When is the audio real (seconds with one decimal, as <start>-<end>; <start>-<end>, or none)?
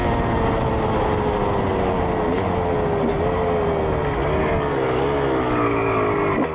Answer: 0.0-6.5